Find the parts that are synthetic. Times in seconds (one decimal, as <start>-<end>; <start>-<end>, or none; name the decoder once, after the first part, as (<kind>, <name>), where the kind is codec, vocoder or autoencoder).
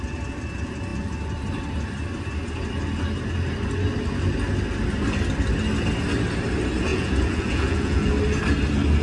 6.9-8.1 (vocoder, Vocos)